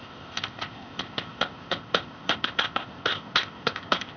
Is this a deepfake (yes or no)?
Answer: yes